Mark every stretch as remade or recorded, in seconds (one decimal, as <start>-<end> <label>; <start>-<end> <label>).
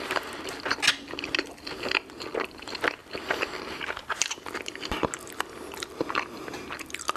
0.0-7.2 recorded